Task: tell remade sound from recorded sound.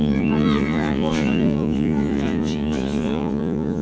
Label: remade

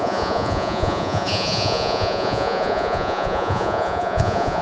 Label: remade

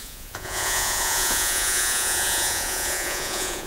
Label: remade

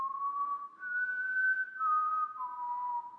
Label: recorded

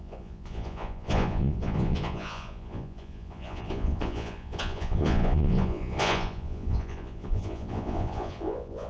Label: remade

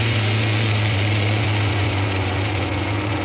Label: remade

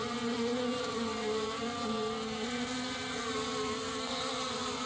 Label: recorded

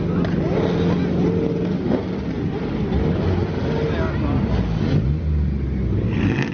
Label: recorded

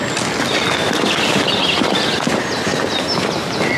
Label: recorded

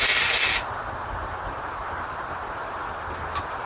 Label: recorded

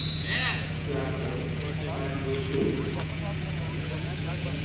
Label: remade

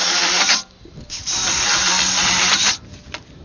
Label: recorded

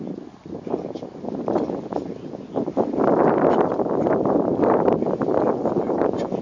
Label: recorded